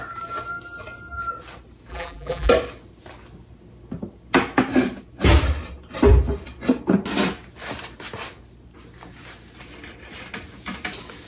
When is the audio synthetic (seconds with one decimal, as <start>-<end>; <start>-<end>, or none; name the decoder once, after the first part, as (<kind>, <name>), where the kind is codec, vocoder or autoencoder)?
1.9-2.5 (vocoder, BigVGAN v2)